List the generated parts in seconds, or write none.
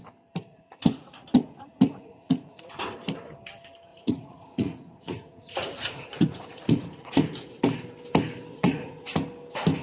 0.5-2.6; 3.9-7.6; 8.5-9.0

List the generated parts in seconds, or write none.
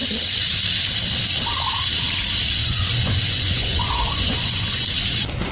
2.6-4.9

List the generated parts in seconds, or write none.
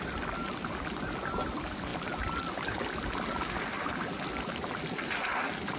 none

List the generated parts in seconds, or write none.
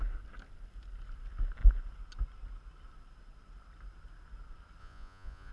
4.8-5.5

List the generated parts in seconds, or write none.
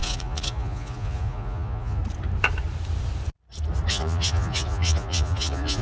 0.0-2.0; 3.9-5.8